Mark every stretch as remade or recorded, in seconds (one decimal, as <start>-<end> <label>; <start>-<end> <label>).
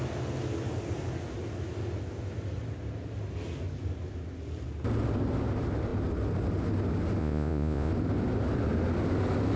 0.0-7.2 recorded; 7.2-7.9 remade; 7.9-9.6 recorded